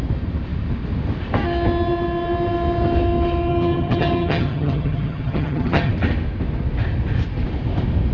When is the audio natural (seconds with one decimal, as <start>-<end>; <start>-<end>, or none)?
0.0-3.5; 5.9-8.1